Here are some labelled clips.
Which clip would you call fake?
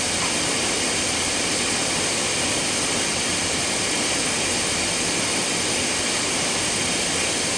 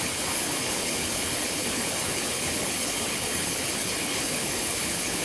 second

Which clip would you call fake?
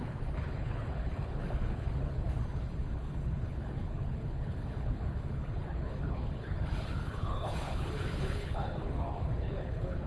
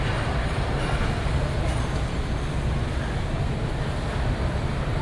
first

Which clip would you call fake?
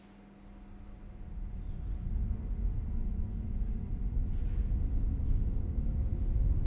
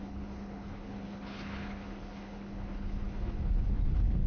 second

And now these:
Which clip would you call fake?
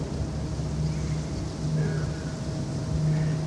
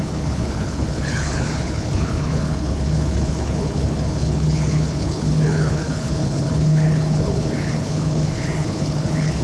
second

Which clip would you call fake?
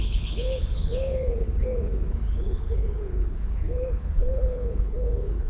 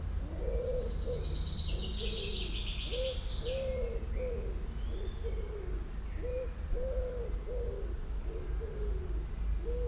first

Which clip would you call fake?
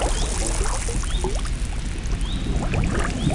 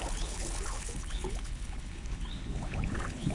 second